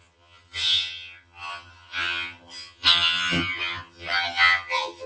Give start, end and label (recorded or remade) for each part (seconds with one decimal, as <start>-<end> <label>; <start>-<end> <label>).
0.0-5.1 remade